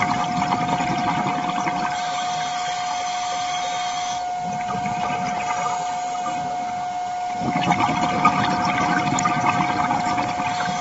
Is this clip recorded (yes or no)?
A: yes